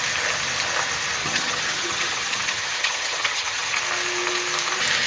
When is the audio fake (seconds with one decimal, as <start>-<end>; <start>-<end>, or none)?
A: 1.2-3.8